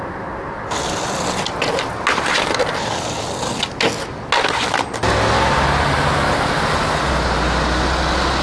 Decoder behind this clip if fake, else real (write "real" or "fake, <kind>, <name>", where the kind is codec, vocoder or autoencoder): real